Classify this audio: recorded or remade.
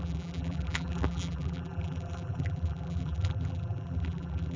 remade